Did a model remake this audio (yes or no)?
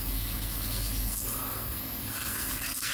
yes